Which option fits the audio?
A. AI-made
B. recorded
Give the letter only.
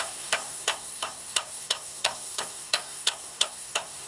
A